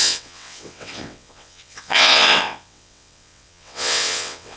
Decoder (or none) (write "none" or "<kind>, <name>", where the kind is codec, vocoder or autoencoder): vocoder, WaveNeXt